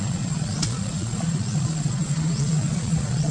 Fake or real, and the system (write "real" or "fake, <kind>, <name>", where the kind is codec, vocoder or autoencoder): fake, vocoder, Vocos